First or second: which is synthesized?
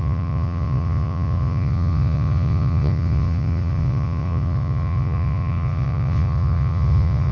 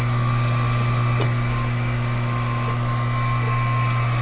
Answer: first